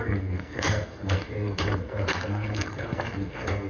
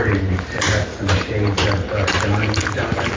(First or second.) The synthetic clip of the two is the first